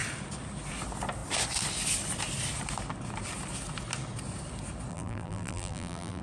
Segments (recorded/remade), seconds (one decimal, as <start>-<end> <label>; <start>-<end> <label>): 0.0-4.9 recorded; 4.9-6.2 remade